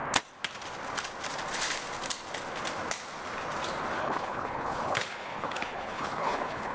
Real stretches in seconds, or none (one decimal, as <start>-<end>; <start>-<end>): 0.0-4.0